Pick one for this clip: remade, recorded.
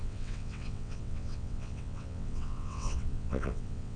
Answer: remade